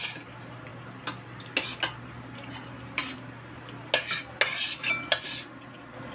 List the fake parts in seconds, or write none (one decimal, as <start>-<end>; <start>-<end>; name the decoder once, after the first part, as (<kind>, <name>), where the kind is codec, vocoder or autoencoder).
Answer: none